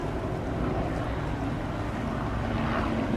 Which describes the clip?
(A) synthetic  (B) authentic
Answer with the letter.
B